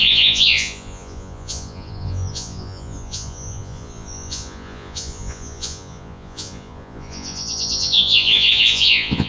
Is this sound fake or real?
fake